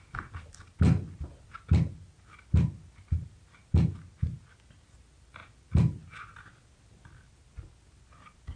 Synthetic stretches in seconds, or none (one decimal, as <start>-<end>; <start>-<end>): none